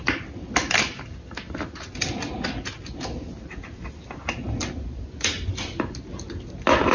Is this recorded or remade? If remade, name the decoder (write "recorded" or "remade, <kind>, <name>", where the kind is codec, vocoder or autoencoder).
recorded